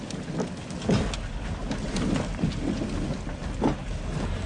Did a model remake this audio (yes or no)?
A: no